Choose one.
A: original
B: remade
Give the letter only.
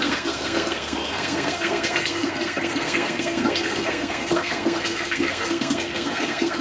B